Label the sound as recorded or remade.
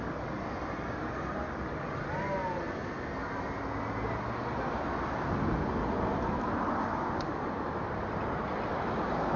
recorded